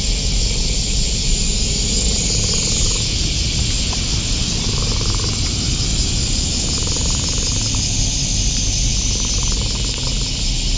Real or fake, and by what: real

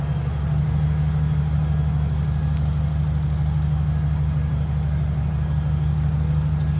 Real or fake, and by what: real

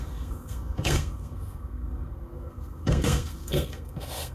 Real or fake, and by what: fake, codec, SNAC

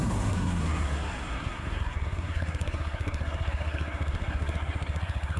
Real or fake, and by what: fake, codec, SNAC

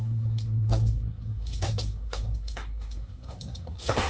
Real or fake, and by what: fake, codec, SNAC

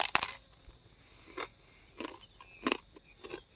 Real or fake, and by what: real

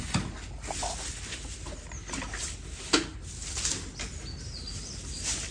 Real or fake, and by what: real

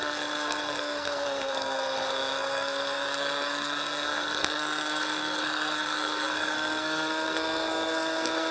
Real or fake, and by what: fake, codec, SNAC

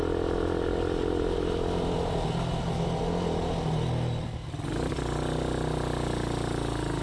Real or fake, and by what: real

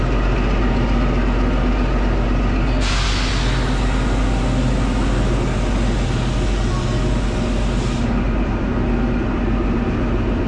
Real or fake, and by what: real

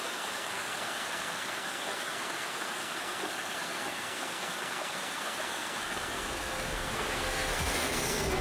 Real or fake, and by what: fake, codec, SNAC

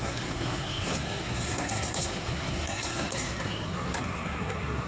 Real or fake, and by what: fake, codec, SNAC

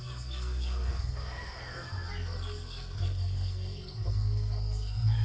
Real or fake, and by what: fake, codec, SNAC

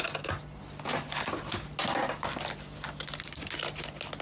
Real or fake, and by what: real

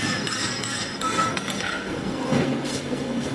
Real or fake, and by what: fake, codec, SNAC